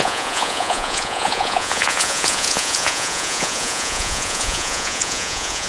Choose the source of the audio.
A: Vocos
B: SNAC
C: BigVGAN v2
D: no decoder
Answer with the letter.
A